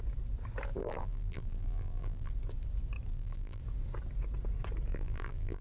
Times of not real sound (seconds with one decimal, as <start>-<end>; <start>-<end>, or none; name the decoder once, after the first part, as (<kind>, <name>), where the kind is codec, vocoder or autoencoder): 0.8-2.3 (vocoder, BigVGAN v2); 3.1-3.6; 4.9-5.6